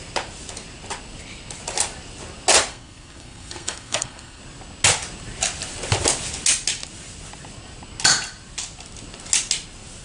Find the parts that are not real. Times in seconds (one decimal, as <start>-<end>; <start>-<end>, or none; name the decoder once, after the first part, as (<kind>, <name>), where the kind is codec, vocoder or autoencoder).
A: 2.7-4.4 (codec, SNAC)